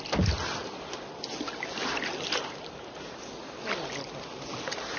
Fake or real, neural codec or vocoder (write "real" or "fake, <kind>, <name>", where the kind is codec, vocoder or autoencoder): real